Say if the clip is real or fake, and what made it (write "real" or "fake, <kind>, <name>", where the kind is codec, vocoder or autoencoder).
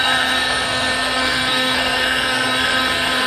fake, codec, SNAC